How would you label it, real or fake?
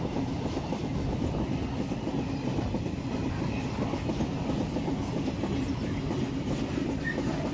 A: real